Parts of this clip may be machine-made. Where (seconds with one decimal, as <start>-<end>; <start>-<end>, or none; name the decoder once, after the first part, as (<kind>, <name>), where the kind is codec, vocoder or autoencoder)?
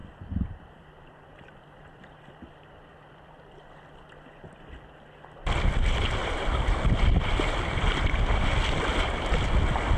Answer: 0.0-4.6 (vocoder, BigVGAN v2); 8.9-9.5